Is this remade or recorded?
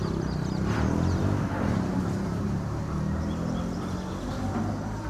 recorded